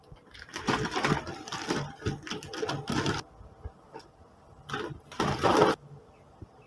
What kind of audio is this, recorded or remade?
remade